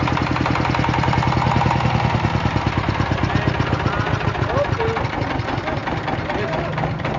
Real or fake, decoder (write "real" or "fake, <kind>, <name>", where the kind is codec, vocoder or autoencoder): real